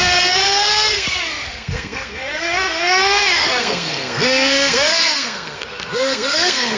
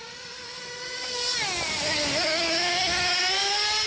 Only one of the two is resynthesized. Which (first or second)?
first